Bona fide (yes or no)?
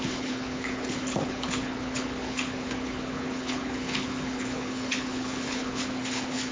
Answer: no